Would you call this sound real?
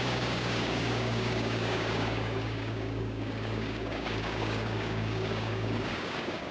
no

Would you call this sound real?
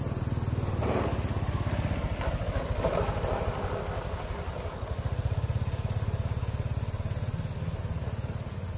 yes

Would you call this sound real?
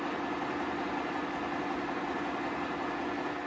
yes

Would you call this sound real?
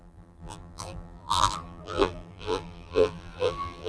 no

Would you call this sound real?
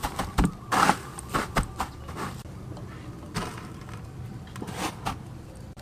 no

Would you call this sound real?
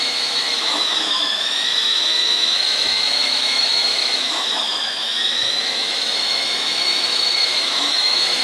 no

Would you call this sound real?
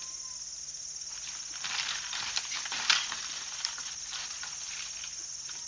yes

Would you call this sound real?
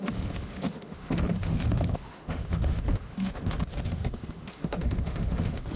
no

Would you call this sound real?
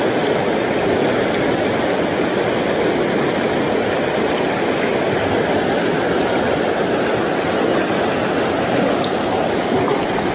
yes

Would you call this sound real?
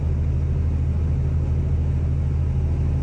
yes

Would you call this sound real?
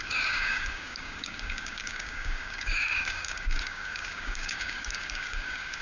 no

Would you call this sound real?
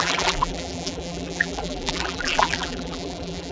no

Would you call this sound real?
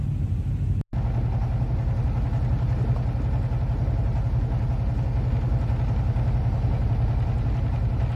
yes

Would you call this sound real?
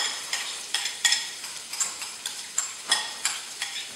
no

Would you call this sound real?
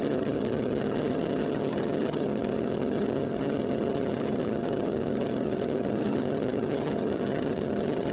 no